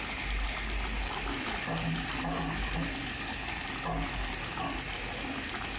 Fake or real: real